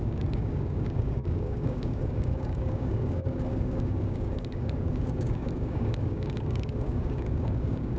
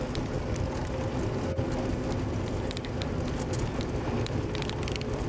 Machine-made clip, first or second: first